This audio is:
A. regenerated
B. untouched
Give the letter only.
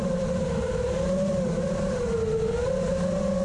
B